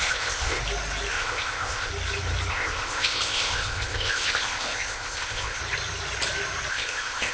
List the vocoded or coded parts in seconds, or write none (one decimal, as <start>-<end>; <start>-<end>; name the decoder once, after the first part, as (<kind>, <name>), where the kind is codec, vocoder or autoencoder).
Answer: 0.0-0.6 (codec, ZipCodec); 1.1-1.9; 2.5-5.6; 6.7-7.3